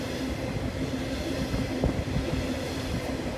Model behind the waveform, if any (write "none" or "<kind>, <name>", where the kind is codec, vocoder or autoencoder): none